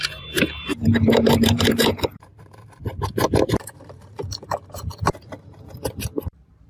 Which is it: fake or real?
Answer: fake